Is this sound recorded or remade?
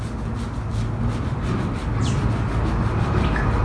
recorded